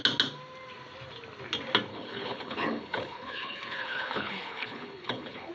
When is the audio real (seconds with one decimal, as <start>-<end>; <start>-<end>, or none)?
0.0-1.9